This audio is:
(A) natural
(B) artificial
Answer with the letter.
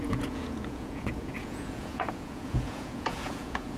B